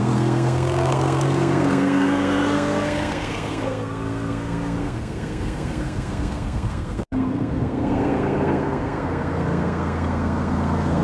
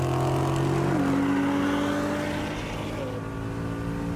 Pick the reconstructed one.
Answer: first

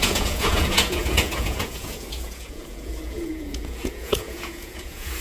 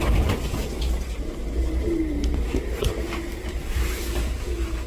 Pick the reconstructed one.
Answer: first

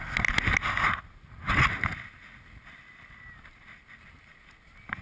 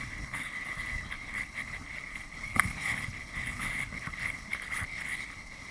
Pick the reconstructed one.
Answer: second